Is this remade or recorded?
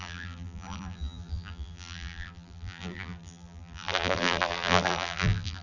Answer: remade